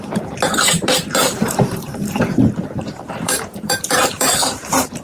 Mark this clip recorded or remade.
remade